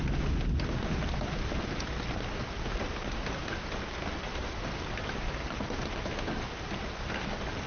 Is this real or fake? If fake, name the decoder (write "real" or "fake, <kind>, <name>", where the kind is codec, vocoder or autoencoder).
real